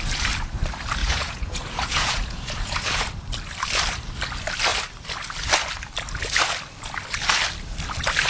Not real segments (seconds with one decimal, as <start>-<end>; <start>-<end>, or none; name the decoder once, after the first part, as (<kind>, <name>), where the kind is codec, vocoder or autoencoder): 1.0-3.1 (vocoder, Vocos)

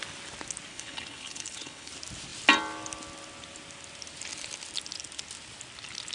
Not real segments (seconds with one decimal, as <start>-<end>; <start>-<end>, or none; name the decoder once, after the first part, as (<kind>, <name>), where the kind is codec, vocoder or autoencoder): 0.7-1.9 (codec, HILCodec)

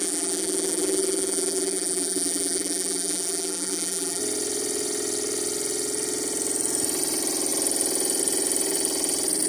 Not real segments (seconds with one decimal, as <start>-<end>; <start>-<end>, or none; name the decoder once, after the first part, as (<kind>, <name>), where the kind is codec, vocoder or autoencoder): 0.0-4.2 (vocoder, BigVGAN v2)

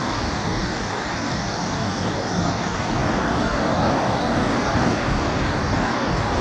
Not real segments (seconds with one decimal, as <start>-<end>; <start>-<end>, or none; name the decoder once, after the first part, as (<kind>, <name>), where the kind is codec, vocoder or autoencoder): 0.0-6.4 (codec, DAC)